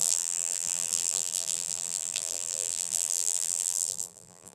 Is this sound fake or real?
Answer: fake